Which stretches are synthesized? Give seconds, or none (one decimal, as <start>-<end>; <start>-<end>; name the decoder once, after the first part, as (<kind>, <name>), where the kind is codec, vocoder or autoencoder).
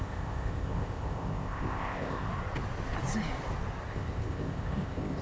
0.0-2.3 (codec, ZipCodec); 3.9-5.2